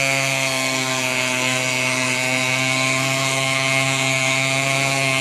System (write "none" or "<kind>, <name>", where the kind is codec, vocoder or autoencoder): codec, SNAC